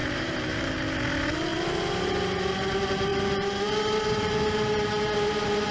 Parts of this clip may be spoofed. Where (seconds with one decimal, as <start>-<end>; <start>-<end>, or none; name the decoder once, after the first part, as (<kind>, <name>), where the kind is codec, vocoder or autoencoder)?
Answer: 0.0-0.7 (vocoder, BigVGAN v2); 1.5-2.5